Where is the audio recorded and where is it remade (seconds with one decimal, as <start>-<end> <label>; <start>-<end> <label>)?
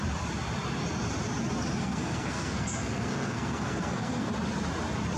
0.0-1.8 recorded; 1.8-4.3 remade; 4.3-5.2 recorded